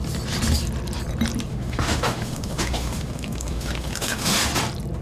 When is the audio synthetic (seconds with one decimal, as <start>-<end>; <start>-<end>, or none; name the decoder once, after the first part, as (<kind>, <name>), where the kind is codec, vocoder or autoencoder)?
1.5-4.5 (autoencoder, DAC-VAE)